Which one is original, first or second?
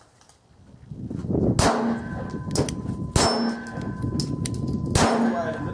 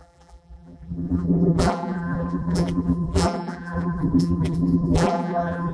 first